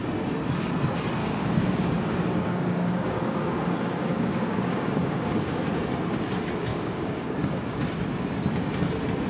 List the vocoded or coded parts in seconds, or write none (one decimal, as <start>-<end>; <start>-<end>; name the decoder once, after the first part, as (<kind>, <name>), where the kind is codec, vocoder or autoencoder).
1.2-5.7 (codec, DAC); 6.7-7.8